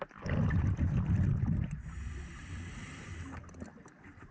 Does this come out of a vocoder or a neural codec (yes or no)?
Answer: no